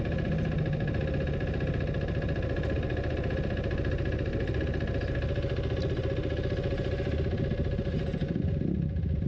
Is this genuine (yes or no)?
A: yes